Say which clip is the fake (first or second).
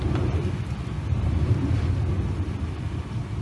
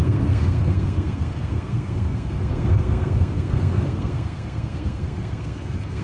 second